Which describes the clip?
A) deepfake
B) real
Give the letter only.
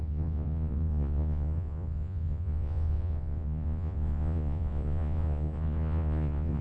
A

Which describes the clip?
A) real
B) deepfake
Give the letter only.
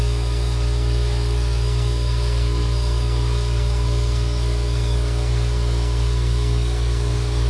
B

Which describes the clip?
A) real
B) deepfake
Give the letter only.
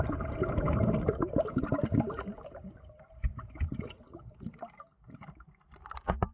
A